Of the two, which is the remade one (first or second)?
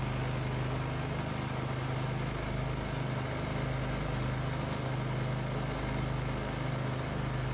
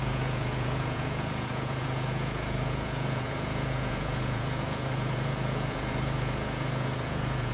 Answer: second